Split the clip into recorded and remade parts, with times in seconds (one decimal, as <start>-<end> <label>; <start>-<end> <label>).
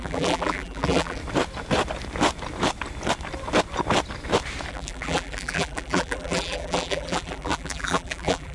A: 0.0-1.2 remade; 1.2-4.7 recorded; 4.7-8.5 remade